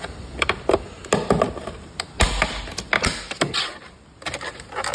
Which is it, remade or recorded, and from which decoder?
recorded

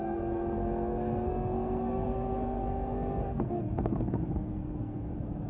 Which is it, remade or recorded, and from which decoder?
remade, codec, SNAC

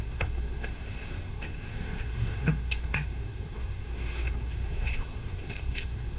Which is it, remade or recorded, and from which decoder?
remade, codec, SNAC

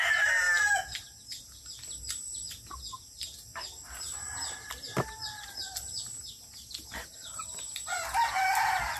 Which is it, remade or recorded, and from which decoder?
recorded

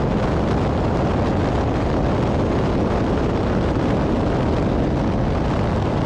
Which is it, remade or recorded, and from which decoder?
recorded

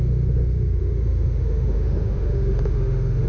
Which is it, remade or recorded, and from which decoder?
remade, autoencoder, DAC-VAE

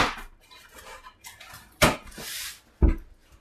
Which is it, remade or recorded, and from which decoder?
recorded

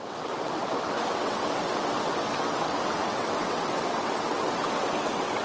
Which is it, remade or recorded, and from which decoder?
remade, vocoder, WaveNeXt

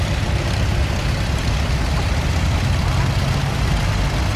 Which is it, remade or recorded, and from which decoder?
recorded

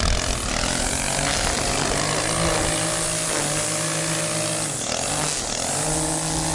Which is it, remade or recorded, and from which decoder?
recorded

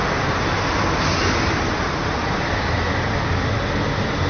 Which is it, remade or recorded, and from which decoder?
recorded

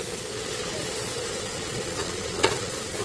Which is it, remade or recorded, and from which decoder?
remade, vocoder, Vocos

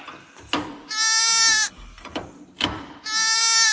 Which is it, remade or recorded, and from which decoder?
recorded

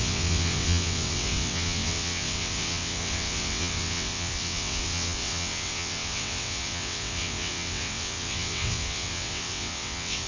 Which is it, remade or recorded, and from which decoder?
remade, vocoder, WaveNeXt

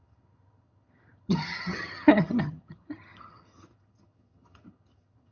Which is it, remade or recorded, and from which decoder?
remade, vocoder, HiFi-GAN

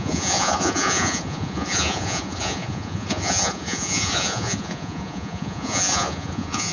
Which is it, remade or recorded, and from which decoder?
remade, vocoder, Vocos